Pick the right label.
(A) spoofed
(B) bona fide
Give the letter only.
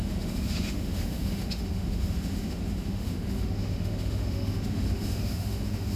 A